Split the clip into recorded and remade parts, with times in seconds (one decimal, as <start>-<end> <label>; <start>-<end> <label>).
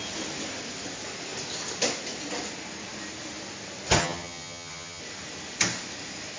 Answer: 0.0-4.0 recorded; 4.0-5.0 remade; 5.0-6.4 recorded